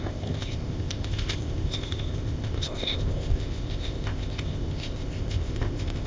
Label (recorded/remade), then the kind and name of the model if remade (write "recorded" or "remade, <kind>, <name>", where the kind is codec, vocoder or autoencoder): remade, codec, ZipCodec